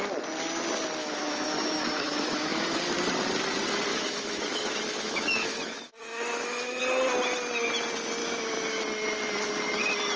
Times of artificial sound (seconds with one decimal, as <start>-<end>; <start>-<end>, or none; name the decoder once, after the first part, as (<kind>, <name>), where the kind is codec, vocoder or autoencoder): 1.0-2.8 (autoencoder, DAC-VAE); 3.9-6.8; 8.2-8.8